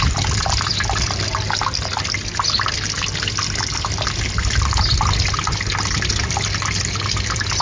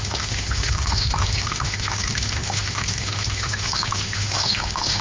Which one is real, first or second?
first